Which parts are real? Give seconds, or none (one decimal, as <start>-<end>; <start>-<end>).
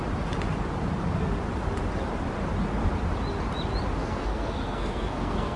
0.0-4.0